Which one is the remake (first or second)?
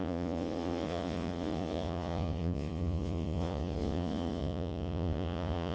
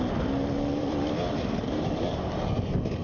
first